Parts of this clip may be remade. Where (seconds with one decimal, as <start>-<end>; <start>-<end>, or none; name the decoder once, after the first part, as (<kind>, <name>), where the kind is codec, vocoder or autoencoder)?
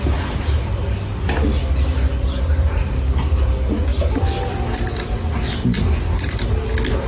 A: none